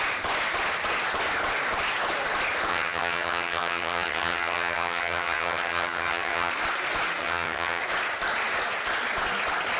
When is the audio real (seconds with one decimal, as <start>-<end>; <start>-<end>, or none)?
0.0-2.7; 6.5-7.2; 7.8-9.8

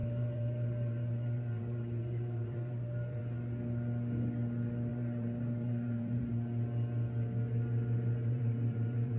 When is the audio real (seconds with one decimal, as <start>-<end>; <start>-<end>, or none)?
3.2-4.9; 6.3-8.2

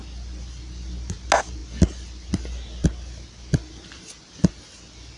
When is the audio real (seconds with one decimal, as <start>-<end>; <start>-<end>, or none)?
0.0-5.2

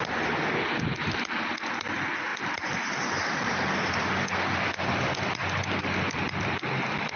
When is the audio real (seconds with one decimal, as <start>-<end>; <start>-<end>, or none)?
0.0-7.2

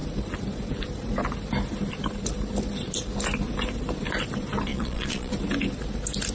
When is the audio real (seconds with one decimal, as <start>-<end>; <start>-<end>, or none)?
0.0-4.7; 5.3-6.3

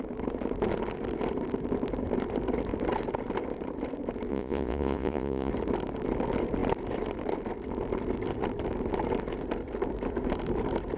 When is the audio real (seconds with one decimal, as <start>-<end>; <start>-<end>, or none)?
0.0-4.3; 5.5-11.0